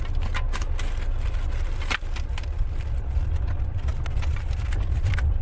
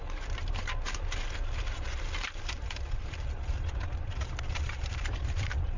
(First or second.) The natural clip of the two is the first